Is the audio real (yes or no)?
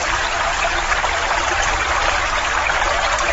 no